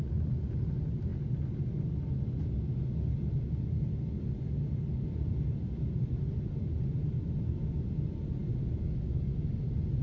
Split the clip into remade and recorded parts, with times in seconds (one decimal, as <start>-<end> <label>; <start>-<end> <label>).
0.0-10.0 recorded